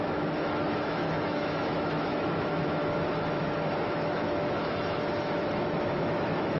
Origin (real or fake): fake